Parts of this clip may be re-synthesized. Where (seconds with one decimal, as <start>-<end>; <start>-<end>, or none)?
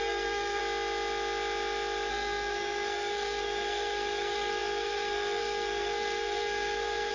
0.0-0.6; 2.1-7.1